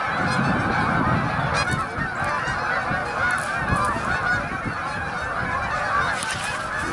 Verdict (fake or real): real